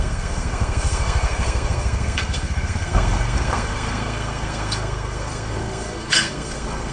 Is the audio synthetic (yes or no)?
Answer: yes